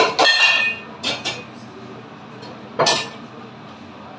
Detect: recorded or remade recorded